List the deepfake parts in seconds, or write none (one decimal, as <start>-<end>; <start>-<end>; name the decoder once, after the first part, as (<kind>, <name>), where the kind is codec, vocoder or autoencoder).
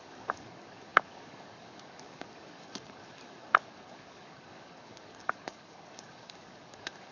0.0-7.1 (codec, DAC)